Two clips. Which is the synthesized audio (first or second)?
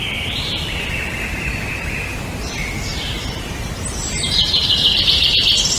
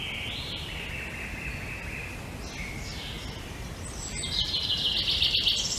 first